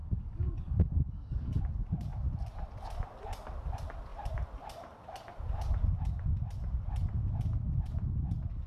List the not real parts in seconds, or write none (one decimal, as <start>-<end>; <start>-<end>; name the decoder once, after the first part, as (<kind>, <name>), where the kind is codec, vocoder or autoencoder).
0.0-1.6 (codec, DAC)